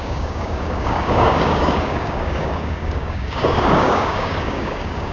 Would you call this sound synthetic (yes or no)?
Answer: yes